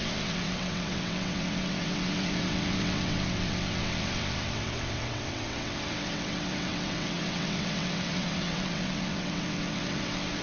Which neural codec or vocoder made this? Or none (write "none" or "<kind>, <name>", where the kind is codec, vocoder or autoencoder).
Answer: vocoder, WaveNeXt